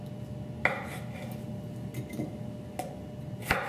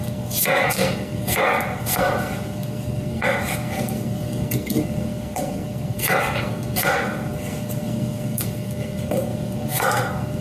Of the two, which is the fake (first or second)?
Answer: second